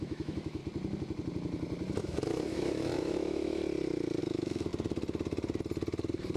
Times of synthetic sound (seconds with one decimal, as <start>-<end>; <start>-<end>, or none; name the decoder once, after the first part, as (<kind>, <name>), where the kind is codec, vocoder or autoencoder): 0.0-0.6 (autoencoder, DAC-VAE); 2.0-3.6; 4.2-4.7